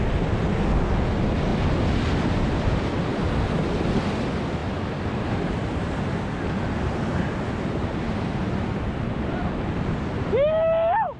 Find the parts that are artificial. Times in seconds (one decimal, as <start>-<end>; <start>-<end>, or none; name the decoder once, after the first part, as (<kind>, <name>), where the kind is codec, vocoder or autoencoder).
none